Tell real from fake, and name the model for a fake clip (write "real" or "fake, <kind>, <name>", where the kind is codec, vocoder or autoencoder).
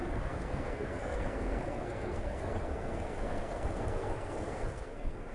fake, codec, SNAC